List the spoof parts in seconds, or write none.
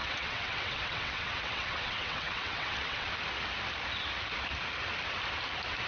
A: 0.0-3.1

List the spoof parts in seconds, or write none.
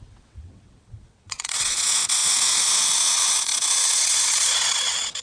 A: 0.0-5.2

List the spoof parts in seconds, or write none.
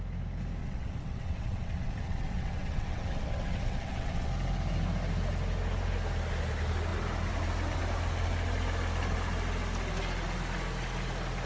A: 0.6-4.3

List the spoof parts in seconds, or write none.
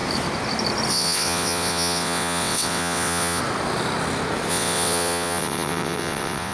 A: 0.9-3.4; 4.5-6.5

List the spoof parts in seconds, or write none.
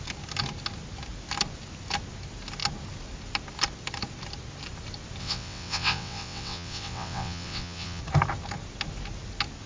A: 5.2-8.0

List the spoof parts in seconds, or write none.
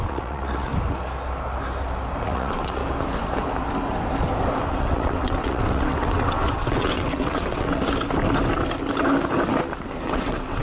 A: 0.0-0.7; 2.2-2.8; 4.7-7.8; 10.0-10.6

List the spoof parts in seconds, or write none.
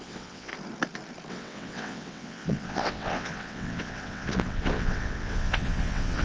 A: 0.0-0.5; 1.3-6.2